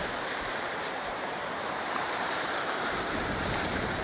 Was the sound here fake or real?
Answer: fake